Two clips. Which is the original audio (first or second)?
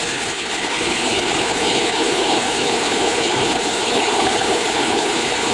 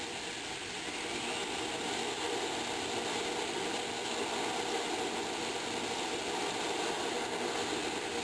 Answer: second